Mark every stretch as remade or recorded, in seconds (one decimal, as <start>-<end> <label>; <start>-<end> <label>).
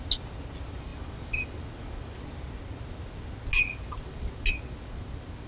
0.0-5.5 recorded